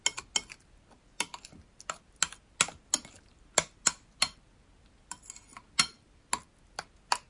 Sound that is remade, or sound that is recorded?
recorded